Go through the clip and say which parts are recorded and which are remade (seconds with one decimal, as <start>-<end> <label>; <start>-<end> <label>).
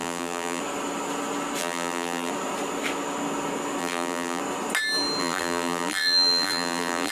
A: 0.0-0.6 remade; 0.6-1.6 recorded; 1.6-2.3 remade; 2.3-3.8 recorded; 3.8-4.4 remade; 4.4-5.2 recorded; 5.2-7.1 remade